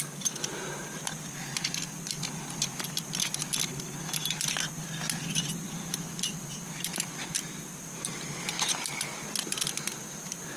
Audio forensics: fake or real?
real